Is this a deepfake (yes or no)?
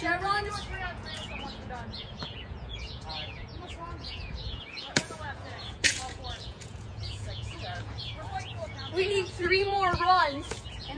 yes